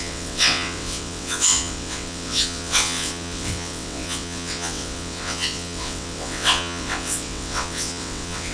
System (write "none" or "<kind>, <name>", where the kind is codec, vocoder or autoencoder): vocoder, WaveNeXt